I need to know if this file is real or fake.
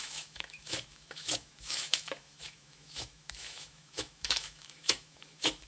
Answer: fake